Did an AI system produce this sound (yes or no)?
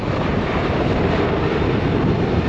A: no